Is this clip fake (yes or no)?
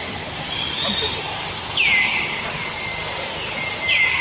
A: no